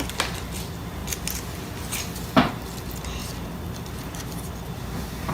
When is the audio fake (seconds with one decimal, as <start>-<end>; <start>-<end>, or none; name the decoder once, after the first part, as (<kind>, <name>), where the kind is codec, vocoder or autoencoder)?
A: 3.2-4.5 (vocoder, BigVGAN v2)